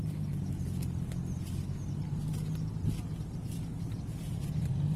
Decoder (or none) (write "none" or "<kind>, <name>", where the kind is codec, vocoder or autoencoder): none